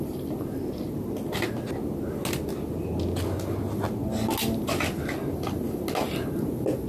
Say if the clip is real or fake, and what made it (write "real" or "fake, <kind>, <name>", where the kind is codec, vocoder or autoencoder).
real